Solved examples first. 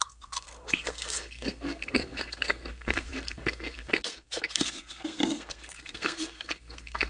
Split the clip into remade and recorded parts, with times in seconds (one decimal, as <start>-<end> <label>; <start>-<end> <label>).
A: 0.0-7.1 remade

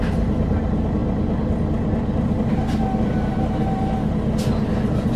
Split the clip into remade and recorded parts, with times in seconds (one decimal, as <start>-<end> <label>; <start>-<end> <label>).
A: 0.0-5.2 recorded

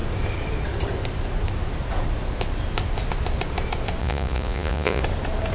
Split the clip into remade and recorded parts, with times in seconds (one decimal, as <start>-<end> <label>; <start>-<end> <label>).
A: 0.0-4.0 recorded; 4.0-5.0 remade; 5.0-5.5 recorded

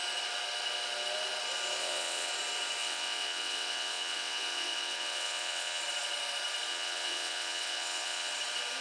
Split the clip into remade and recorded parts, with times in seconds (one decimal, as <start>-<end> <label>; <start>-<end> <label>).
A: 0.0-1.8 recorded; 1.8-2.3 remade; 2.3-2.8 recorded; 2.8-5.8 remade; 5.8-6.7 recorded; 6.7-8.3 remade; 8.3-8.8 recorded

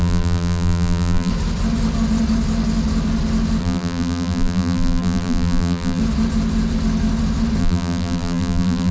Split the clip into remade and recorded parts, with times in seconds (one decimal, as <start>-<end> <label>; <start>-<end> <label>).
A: 0.0-1.3 remade; 1.3-3.6 recorded; 3.6-6.0 remade; 6.0-7.6 recorded; 7.6-8.9 remade

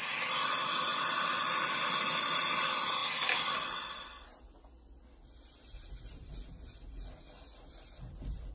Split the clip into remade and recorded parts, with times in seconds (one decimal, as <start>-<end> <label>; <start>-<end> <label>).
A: 0.0-8.5 recorded

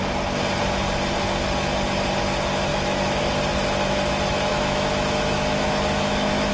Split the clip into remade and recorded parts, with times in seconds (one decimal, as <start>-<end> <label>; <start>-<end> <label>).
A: 0.0-2.7 recorded; 2.7-3.2 remade; 3.2-4.5 recorded; 4.5-6.5 remade